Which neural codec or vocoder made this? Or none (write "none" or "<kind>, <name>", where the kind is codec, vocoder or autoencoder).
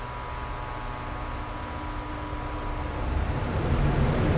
none